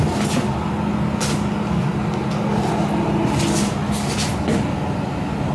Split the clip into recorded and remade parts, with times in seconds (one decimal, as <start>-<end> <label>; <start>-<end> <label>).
0.0-5.5 recorded